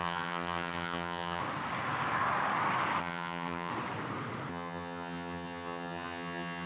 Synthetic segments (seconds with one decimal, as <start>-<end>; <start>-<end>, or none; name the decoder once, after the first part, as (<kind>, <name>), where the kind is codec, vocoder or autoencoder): 0.0-1.4 (vocoder, HiFi-GAN); 3.0-3.7; 4.5-6.7